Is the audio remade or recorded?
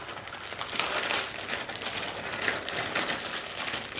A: recorded